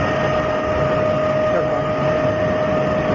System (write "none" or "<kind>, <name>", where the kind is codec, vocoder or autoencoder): none